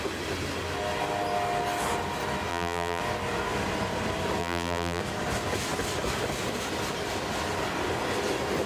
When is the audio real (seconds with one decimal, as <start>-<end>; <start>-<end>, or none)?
0.0-2.5; 3.0-4.4; 5.0-8.7